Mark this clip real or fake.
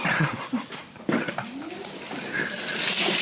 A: real